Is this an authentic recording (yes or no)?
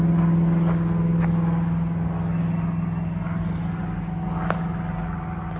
yes